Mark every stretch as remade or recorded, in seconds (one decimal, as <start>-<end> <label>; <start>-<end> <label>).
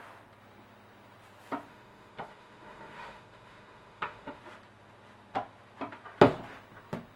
0.0-1.7 recorded; 1.7-4.4 remade; 4.4-7.2 recorded